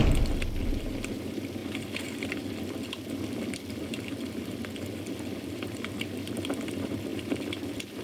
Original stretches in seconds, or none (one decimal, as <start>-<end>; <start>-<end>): 0.0-8.0